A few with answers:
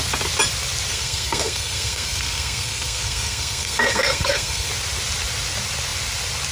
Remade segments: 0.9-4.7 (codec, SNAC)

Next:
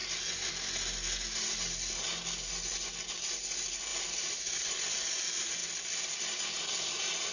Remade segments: 3.9-4.7 (vocoder, BigVGAN v2)

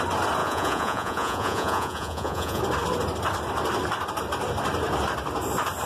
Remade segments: 0.4-2.6 (vocoder, Vocos)

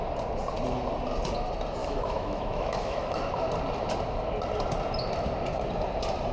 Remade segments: 1.8-3.2 (autoencoder, DAC-VAE)